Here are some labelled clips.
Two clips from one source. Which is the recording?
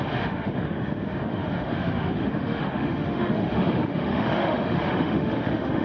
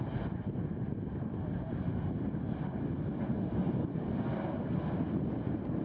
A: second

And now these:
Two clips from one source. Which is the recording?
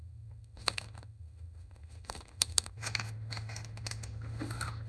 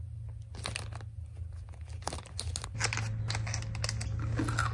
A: second